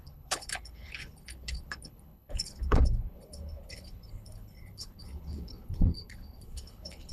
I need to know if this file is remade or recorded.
remade